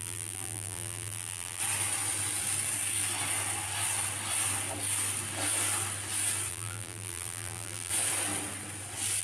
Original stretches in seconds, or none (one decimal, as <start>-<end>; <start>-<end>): 1.6-6.5; 7.9-9.2